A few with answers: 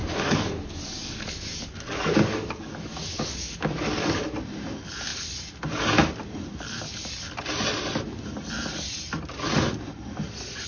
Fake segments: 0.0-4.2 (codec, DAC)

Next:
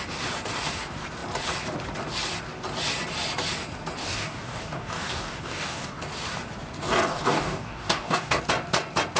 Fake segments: 4.0-6.0 (codec, DAC); 7.1-8.4

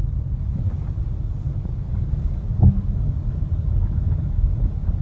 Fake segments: 0.0-0.7 (codec, DAC); 1.6-4.6

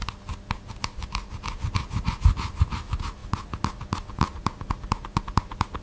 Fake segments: none

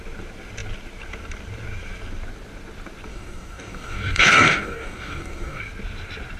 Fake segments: 3.1-5.6 (codec, DAC)

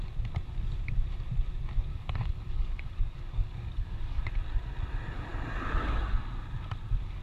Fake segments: 1.9-4.2 (codec, DAC)

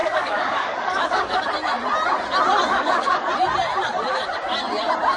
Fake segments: 0.0-1.4 (codec, DAC); 2.7-3.3